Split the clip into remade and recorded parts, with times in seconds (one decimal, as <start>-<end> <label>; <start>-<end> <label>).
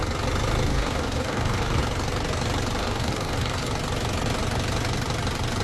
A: 0.0-0.7 recorded; 0.7-1.8 remade; 1.8-2.8 recorded; 2.8-3.7 remade; 3.7-5.6 recorded